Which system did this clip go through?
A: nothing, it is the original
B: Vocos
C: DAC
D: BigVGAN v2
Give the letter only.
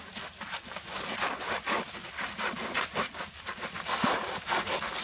D